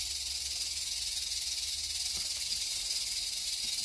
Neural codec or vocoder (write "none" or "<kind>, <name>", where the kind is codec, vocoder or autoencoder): none